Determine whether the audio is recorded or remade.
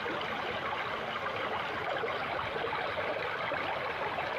recorded